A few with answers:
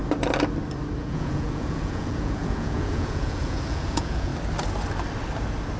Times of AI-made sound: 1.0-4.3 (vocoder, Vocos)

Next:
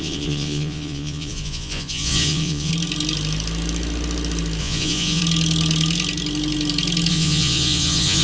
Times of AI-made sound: 0.0-2.7 (vocoder, Vocos); 4.6-5.2; 7.1-8.2